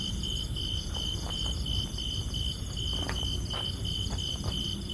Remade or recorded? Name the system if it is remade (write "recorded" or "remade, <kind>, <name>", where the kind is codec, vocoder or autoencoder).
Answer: remade, vocoder, BigVGAN v2